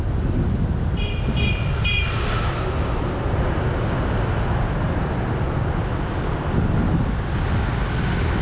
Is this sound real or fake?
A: real